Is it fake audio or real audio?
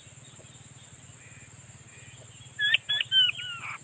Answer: real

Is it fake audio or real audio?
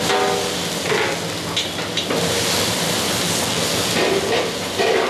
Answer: real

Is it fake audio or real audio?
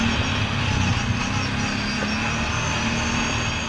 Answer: real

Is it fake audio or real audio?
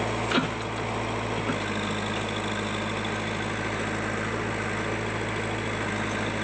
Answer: real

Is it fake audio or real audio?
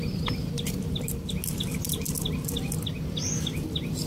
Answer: real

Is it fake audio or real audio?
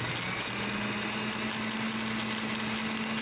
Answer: real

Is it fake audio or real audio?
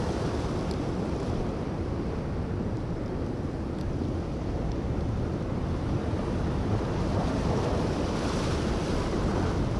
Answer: real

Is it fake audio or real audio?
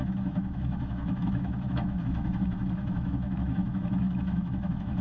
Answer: fake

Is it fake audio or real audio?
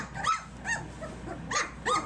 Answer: real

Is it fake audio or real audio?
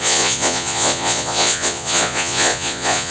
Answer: fake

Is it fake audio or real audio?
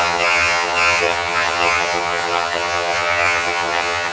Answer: fake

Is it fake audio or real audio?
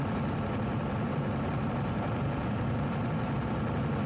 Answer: real